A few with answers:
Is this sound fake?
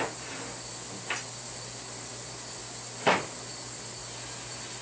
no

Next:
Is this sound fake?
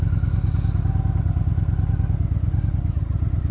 no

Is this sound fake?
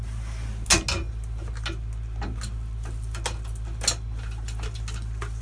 no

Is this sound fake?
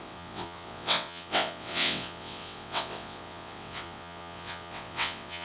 yes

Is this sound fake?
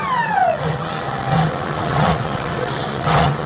yes